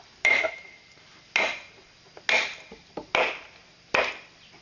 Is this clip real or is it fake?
real